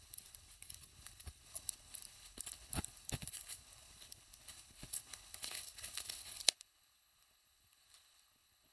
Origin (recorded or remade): remade